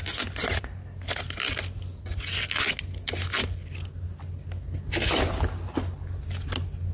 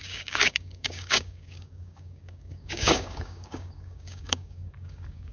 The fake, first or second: second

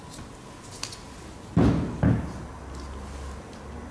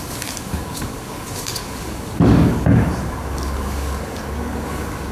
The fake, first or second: second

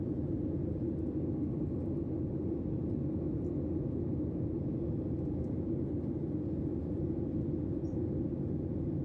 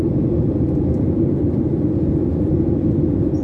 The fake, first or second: second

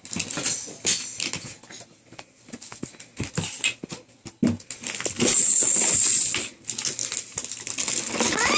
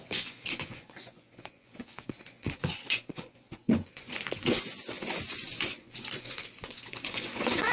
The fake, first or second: second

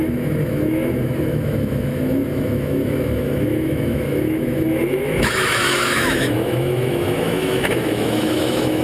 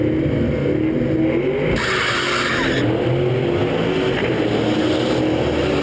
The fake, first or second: first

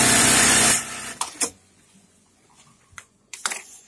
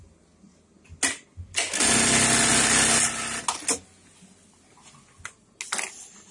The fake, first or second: first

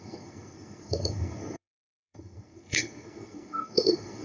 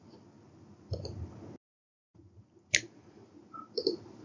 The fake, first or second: first